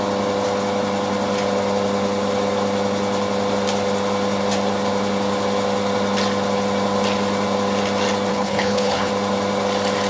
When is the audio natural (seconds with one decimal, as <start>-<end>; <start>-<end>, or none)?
0.0-8.3; 9.1-10.1